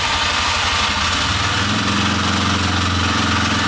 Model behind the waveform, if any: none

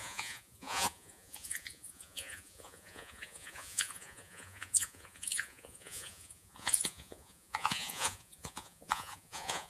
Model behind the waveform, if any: vocoder, Vocos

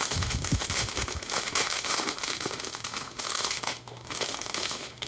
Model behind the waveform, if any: autoencoder, DAC-VAE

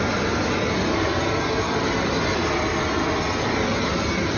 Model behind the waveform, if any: none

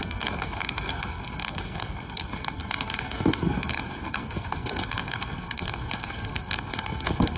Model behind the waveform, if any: codec, SNAC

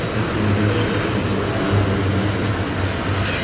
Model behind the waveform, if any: none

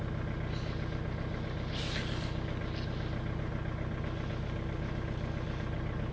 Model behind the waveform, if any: none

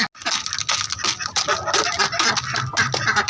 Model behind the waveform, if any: none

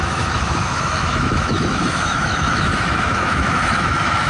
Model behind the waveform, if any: autoencoder, DAC-VAE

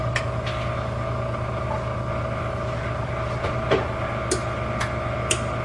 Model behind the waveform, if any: none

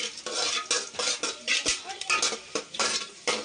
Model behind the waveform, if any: none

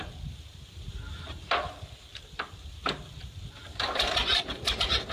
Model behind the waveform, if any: vocoder, BigVGAN v2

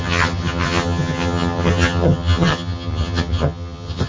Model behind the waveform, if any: vocoder, HiFi-GAN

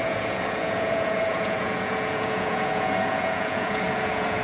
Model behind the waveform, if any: vocoder, Vocos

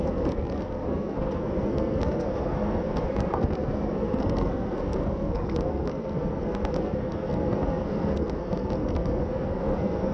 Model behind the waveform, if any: codec, SNAC